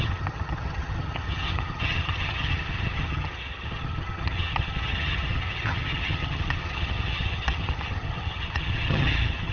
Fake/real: fake